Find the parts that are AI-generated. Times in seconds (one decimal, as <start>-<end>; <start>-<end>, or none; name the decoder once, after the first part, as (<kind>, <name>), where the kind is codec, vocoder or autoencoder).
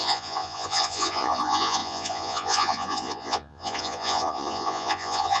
0.0-5.4 (vocoder, Vocos)